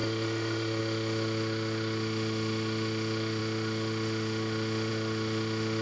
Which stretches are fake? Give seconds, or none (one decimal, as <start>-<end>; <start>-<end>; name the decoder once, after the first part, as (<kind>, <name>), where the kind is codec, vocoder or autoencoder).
0.0-5.8 (autoencoder, DAC-VAE)